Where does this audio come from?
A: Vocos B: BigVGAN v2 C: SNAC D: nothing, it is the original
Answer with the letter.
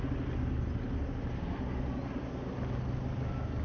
D